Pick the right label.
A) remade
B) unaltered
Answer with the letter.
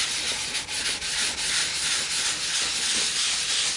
B